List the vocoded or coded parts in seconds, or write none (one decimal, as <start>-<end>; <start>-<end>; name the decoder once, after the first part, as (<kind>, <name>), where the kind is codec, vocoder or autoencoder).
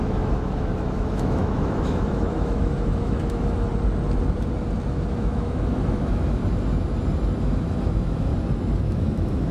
0.0-3.7 (autoencoder, DAC-VAE); 4.9-6.4; 7.4-8.3; 8.9-9.5